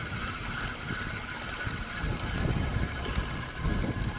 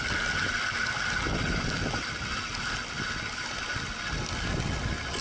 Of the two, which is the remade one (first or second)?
first